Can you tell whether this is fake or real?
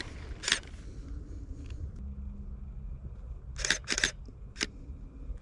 real